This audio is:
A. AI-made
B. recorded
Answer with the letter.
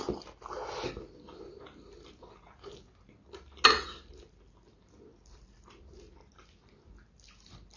B